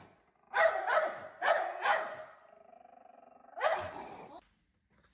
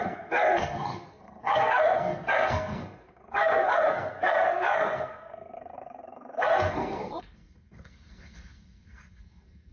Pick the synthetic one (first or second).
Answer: second